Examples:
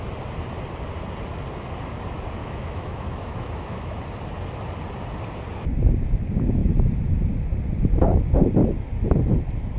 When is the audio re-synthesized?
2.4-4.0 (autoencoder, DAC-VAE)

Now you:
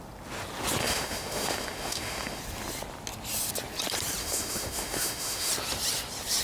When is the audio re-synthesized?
0.8-2.4 (autoencoder, DAC-VAE); 4.2-5.5

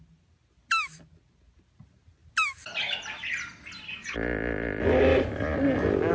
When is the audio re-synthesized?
none

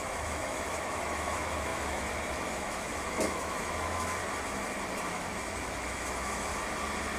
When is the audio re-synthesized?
0.0-4.2 (autoencoder, DAC-VAE); 5.1-6.5

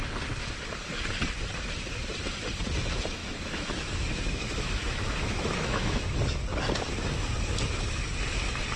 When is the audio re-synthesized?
3.2-6.0 (autoencoder, DAC-VAE)

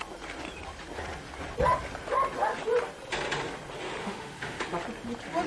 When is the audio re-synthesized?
4.0-4.6 (autoencoder, DAC-VAE)

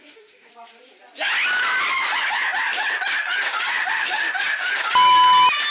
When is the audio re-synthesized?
0.0-0.5 (autoencoder, DAC-VAE); 3.7-4.7

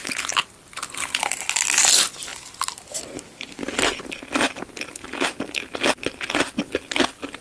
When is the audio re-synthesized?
none